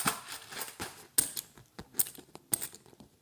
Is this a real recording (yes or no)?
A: yes